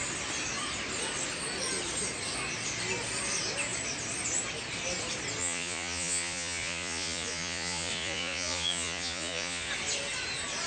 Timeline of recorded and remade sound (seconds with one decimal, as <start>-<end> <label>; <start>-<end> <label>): 0.0-5.4 recorded; 5.4-9.7 remade; 9.7-10.7 recorded